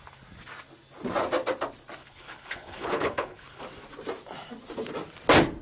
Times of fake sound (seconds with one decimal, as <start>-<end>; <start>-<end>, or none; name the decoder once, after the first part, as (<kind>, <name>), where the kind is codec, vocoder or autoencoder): 2.0-3.6 (codec, HILCodec)